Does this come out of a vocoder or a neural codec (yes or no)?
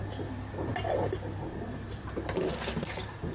no